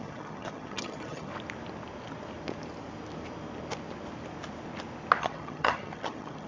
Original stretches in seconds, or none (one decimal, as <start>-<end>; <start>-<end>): 1.3-5.2